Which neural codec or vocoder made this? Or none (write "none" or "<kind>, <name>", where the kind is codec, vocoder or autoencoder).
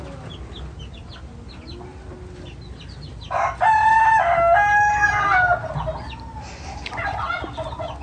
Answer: none